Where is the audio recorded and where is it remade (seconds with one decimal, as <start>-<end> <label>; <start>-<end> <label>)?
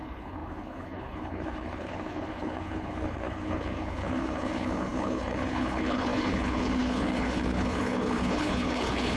0.0-9.2 remade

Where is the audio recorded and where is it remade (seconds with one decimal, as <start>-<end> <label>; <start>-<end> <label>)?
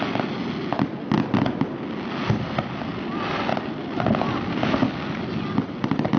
0.0-6.2 recorded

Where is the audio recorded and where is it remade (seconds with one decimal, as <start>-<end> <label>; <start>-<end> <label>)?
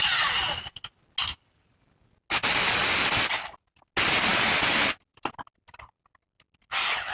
0.0-7.1 recorded